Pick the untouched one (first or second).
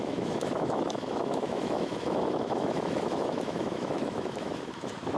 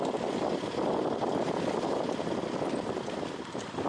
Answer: second